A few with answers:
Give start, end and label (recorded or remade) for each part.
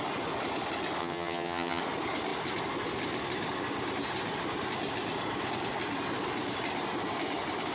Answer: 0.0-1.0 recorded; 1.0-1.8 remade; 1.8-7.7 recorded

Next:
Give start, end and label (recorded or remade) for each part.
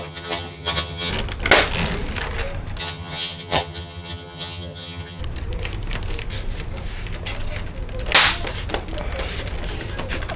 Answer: 0.0-1.1 remade; 1.1-2.8 recorded; 2.8-5.2 remade; 5.2-10.4 recorded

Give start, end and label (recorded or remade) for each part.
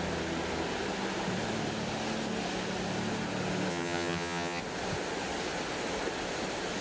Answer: 0.0-3.7 recorded; 3.7-4.6 remade; 4.6-6.8 recorded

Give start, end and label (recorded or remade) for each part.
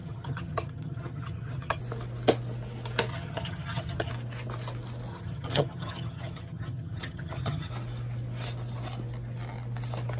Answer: 0.0-1.8 remade; 1.8-3.1 recorded; 3.1-4.1 remade; 4.1-5.1 recorded; 5.1-7.7 remade; 7.7-10.2 recorded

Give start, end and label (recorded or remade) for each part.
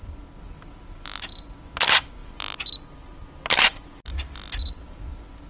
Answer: 0.0-5.5 recorded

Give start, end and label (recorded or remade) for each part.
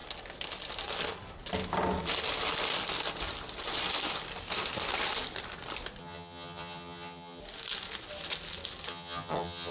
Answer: 0.0-6.0 recorded; 6.0-7.4 remade; 7.4-8.9 recorded; 8.9-9.7 remade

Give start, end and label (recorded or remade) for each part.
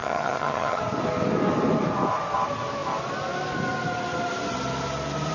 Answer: 0.0-0.8 remade; 0.8-5.3 recorded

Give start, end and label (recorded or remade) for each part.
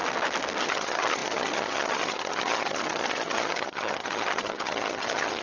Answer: 0.0-0.6 recorded; 0.6-5.4 remade